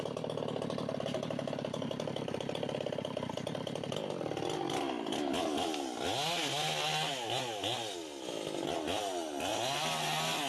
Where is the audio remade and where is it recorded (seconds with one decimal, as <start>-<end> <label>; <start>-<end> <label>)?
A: 0.0-10.5 recorded

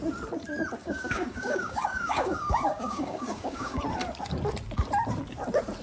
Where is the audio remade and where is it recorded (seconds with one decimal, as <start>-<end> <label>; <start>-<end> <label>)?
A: 0.0-0.8 recorded; 0.8-3.8 remade; 3.8-5.8 recorded

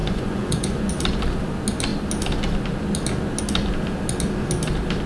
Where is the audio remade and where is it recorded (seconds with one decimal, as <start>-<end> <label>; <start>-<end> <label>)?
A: 0.0-0.9 remade; 0.9-5.1 recorded

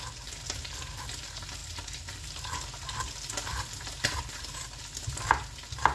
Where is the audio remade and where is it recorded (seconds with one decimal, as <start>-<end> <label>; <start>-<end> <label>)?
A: 0.0-1.6 recorded; 1.6-2.2 remade; 2.2-3.5 recorded; 3.5-4.9 remade; 4.9-5.9 recorded

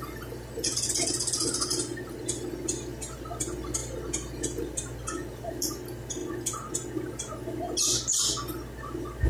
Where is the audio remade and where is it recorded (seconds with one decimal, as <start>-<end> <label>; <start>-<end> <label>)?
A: 0.0-9.3 recorded

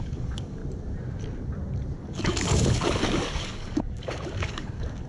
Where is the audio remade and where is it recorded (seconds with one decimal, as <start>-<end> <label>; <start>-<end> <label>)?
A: 0.0-0.6 remade; 0.6-2.0 recorded; 2.0-5.1 remade

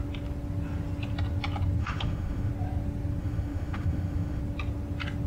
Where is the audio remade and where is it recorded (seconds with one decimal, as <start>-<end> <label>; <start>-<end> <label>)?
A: 0.0-1.8 recorded; 1.8-2.5 remade; 2.5-3.2 recorded; 3.2-4.4 remade; 4.4-5.3 recorded

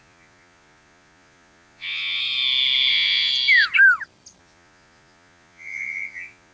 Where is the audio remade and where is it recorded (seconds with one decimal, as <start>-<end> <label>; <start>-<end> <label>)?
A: 0.0-2.2 remade; 2.2-2.9 recorded; 2.9-3.3 remade; 3.3-4.4 recorded; 4.4-6.5 remade